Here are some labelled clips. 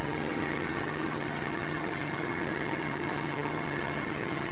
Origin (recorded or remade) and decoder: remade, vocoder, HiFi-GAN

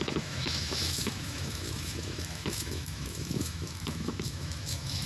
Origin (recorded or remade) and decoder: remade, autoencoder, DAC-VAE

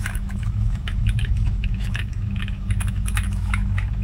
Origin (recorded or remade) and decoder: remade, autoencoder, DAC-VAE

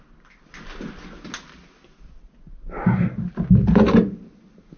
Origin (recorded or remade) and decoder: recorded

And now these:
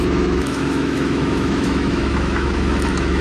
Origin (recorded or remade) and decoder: remade, autoencoder, DAC-VAE